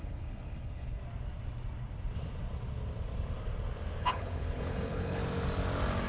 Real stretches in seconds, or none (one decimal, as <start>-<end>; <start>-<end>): 1.0-4.0; 5.2-6.1